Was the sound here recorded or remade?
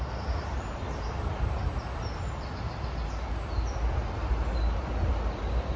recorded